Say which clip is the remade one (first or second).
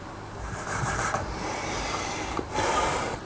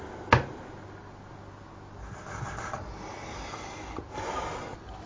first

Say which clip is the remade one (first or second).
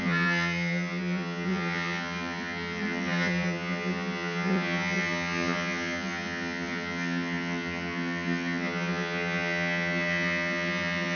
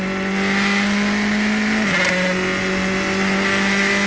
first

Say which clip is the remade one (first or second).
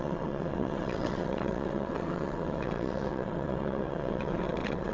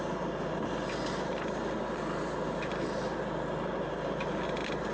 first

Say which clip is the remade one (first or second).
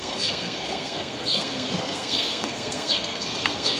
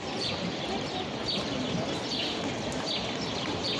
first